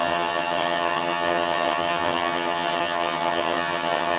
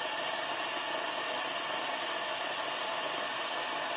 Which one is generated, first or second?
first